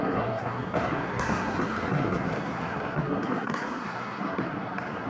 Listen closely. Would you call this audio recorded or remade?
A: remade